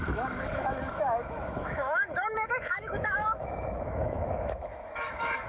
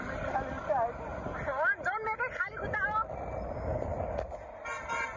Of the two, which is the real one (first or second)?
second